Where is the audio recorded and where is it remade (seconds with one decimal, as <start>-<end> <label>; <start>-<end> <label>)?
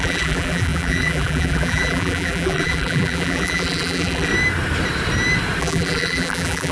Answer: 0.0-4.3 remade; 4.3-5.6 recorded; 5.6-6.7 remade